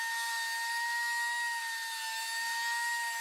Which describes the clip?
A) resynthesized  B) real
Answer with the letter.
B